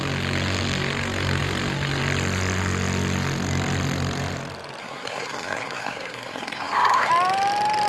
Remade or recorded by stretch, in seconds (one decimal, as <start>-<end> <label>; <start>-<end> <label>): 0.0-4.8 recorded; 4.8-7.1 remade; 7.1-7.9 recorded